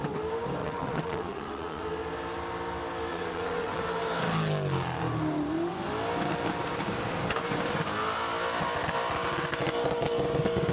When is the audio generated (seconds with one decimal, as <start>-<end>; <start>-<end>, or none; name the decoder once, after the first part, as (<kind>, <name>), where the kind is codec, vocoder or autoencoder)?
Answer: 0.6-1.8 (vocoder, WaveNeXt); 3.1-3.8